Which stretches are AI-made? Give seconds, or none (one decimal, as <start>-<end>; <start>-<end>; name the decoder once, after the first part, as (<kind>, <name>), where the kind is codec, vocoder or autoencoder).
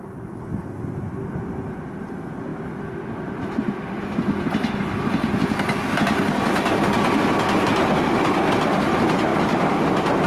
none